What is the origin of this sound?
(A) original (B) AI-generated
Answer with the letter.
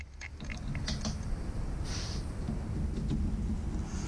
A